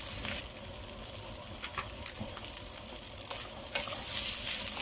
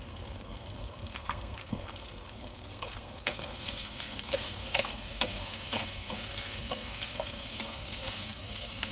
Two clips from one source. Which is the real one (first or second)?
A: first